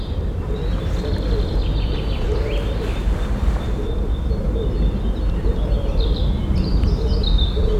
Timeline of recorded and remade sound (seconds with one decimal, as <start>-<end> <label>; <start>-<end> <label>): 0.0-7.8 recorded